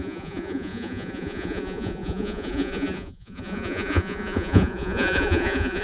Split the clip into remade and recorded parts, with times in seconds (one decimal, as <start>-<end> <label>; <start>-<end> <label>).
0.0-5.8 remade